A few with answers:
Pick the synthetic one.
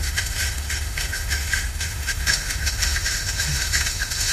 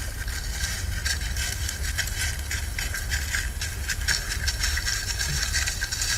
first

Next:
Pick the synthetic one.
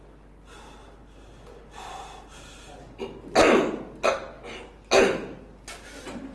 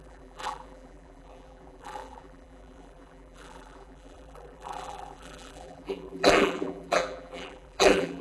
second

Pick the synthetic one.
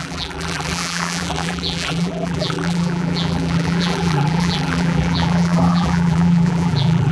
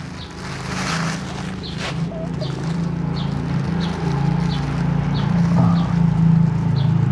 first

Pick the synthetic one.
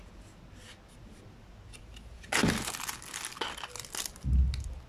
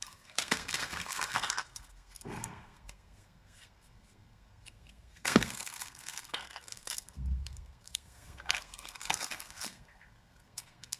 second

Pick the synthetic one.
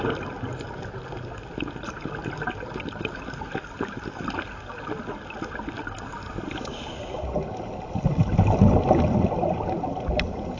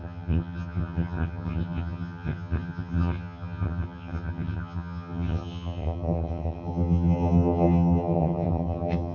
second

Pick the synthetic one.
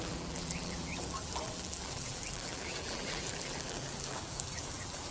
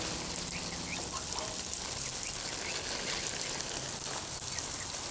first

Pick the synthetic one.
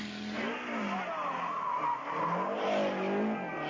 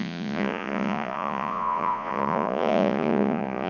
second